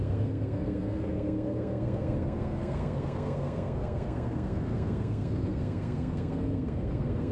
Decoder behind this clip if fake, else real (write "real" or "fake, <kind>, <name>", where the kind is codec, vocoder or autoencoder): fake, codec, SNAC